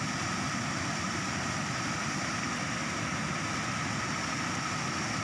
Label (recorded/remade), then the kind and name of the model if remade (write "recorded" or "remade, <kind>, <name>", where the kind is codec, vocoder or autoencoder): recorded